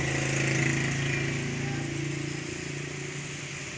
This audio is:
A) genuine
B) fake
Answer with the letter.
A